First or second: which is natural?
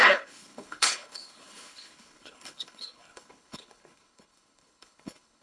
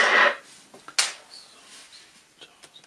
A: second